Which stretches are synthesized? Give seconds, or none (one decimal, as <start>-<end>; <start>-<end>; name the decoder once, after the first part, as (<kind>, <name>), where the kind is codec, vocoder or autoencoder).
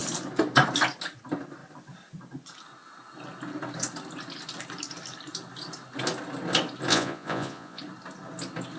6.9-7.8 (vocoder, Vocos)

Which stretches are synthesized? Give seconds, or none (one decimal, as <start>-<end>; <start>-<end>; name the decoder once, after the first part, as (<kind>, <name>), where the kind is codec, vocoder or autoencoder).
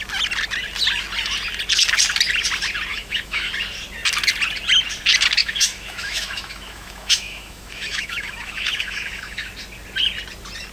2.9-3.5 (autoencoder, DAC-VAE); 5.4-9.5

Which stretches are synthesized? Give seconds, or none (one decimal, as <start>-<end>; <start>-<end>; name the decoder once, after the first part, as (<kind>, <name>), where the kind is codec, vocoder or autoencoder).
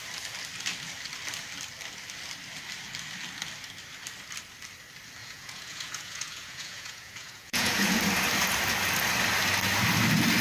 5.2-7.9 (vocoder, Vocos)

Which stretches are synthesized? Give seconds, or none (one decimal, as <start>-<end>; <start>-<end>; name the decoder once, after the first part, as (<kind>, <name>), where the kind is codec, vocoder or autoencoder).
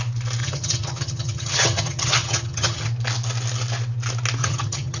0.4-2.9 (vocoder, HiFi-GAN); 4.4-5.0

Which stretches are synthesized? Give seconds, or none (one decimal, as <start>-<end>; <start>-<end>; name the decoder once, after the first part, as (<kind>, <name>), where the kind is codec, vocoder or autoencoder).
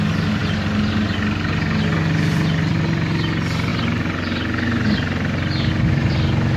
none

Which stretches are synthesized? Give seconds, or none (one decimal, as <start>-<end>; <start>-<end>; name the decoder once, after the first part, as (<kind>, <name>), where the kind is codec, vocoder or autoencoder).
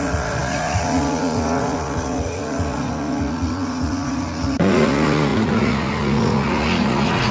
0.0-7.3 (vocoder, Vocos)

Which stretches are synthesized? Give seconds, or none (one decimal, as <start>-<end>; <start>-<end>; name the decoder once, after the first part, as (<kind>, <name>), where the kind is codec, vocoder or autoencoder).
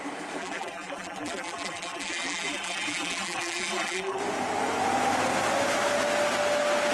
0.4-4.2 (vocoder, BigVGAN v2)